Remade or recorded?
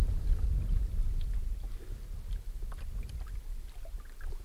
recorded